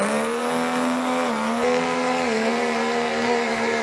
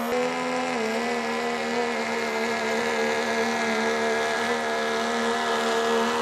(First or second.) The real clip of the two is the second